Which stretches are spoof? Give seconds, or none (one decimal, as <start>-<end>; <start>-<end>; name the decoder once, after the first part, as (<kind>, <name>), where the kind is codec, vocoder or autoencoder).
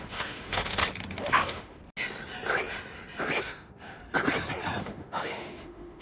0.0-0.8 (autoencoder, DAC-VAE); 1.3-1.8; 3.4-4.0; 4.8-6.0